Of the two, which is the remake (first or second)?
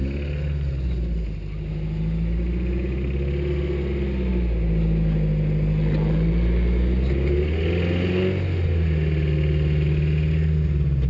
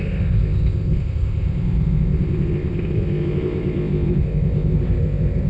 second